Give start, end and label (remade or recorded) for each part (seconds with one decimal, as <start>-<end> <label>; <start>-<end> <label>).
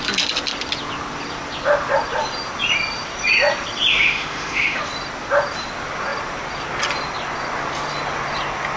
0.0-3.9 recorded; 3.9-4.8 remade; 4.8-8.8 recorded